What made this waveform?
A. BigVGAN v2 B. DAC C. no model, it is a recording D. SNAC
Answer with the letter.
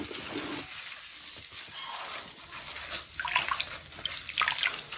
C